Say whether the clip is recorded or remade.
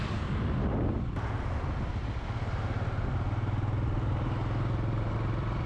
recorded